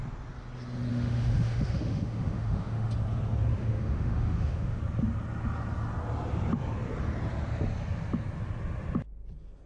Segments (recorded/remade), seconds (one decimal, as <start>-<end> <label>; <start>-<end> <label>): 0.0-0.9 recorded; 0.9-2.9 remade; 2.9-3.6 recorded; 3.6-4.8 remade; 4.8-9.7 recorded